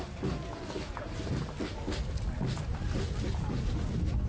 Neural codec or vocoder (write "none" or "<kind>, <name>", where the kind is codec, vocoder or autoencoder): none